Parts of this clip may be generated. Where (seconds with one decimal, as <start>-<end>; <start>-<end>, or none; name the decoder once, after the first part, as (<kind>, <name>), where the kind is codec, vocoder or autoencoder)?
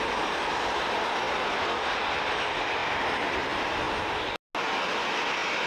none